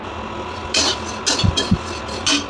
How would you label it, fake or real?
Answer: real